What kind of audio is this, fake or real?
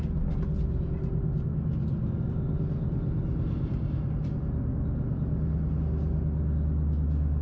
real